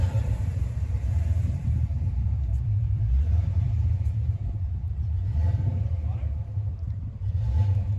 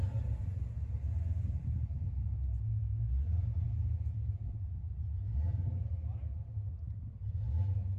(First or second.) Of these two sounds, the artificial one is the first